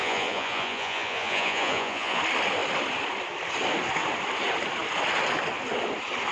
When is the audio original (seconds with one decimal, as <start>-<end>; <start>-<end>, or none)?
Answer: 2.2-6.3